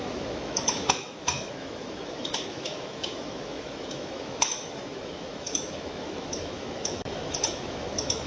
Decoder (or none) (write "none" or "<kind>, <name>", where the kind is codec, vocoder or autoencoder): autoencoder, DAC-VAE